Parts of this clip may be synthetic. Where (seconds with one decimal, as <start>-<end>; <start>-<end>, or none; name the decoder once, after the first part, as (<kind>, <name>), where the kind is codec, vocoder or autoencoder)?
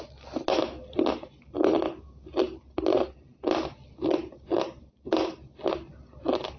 none